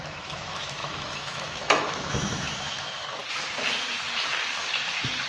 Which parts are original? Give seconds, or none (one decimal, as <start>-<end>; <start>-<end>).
3.2-5.3